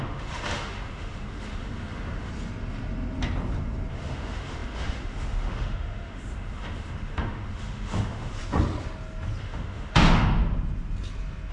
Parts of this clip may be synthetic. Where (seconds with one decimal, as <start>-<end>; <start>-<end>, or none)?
0.0-2.3; 3.9-8.4; 9.4-10.4